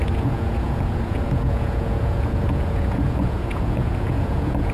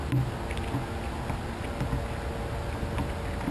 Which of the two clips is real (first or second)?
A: second